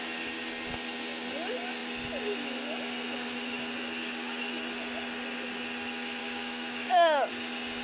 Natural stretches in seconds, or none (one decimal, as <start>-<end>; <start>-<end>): 0.0-6.2; 7.3-7.8